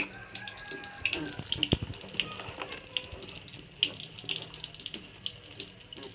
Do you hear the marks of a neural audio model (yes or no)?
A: no